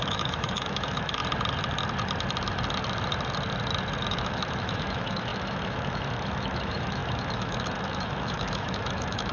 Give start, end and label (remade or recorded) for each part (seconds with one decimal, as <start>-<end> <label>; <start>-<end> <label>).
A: 0.0-1.2 remade; 1.2-4.1 recorded; 4.1-9.3 remade